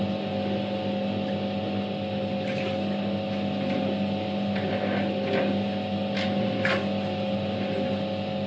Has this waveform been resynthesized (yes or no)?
no